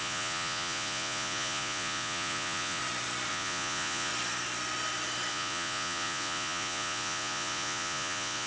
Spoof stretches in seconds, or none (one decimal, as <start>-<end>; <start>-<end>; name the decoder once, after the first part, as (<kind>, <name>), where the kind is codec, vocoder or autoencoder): 0.0-2.8 (vocoder, Vocos); 3.3-4.1; 5.3-8.5